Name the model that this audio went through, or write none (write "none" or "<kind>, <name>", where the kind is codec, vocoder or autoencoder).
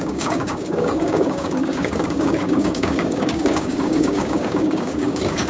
codec, DAC